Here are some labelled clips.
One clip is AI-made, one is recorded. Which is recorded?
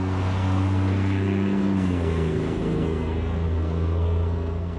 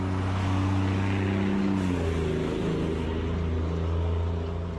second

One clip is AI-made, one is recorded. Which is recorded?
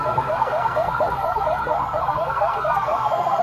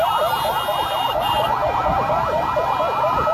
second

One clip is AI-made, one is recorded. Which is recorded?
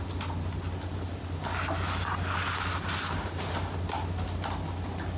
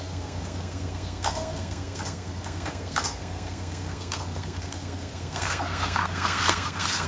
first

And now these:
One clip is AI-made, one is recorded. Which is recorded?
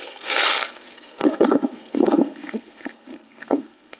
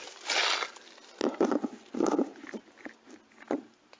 second